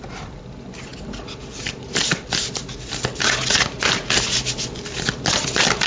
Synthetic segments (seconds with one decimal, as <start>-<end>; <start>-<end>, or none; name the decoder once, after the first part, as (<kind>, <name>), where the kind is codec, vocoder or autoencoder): none